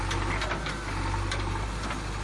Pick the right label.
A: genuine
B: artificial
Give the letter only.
A